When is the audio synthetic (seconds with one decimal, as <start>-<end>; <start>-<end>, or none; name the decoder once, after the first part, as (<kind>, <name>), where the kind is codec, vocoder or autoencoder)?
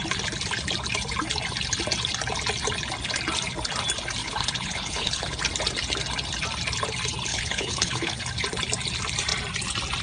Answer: 4.2-5.4 (codec, HILCodec); 7.3-8.2